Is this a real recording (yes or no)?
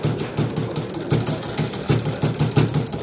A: yes